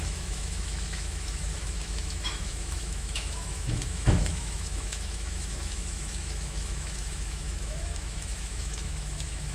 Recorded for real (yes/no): no